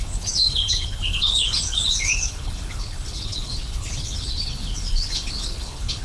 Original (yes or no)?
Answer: no